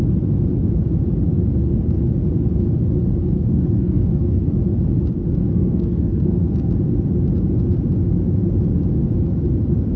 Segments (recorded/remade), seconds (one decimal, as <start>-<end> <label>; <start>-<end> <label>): 0.0-3.2 recorded; 3.2-4.4 remade; 4.4-5.5 recorded; 5.5-6.7 remade; 6.7-10.0 recorded